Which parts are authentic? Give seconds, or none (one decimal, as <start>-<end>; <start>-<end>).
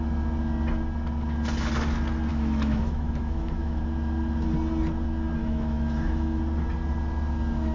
0.0-2.3; 3.8-5.4; 6.4-7.7